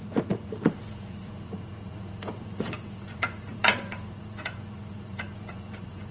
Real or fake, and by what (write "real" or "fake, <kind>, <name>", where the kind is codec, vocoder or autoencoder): fake, vocoder, Vocos